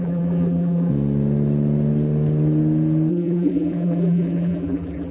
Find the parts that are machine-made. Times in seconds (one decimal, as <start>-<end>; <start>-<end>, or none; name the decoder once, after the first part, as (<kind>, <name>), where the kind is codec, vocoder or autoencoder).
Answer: 0.0-0.9 (vocoder, BigVGAN v2); 3.1-5.1